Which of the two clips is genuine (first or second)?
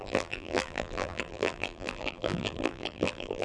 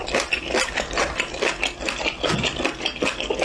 second